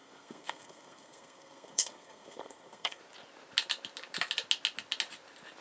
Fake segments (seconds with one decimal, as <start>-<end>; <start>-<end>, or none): 0.0-3.0